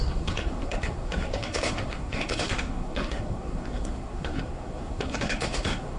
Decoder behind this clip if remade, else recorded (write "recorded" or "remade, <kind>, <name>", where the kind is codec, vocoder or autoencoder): remade, codec, SNAC